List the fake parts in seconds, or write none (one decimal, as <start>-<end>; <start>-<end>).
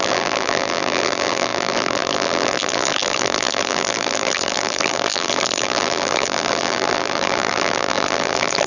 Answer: 0.0-8.7